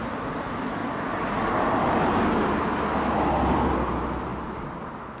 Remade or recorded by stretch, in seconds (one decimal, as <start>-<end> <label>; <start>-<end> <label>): 0.0-5.2 recorded